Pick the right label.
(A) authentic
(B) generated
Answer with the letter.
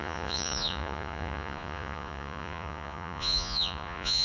B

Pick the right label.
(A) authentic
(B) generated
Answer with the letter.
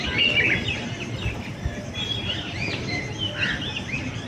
A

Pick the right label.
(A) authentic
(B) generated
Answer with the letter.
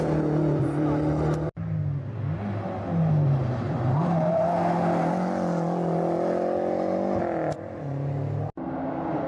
A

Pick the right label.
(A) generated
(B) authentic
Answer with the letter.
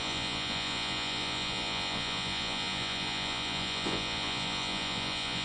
A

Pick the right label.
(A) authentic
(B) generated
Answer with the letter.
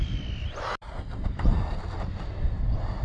A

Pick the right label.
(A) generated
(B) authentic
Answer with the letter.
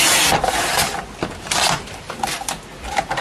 B